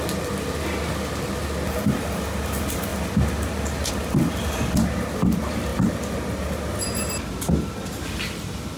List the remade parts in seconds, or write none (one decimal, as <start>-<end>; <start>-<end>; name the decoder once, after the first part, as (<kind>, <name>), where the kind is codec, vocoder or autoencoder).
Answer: none